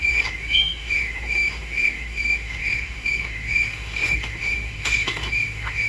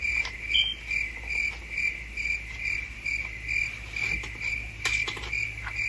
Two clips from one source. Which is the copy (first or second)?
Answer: first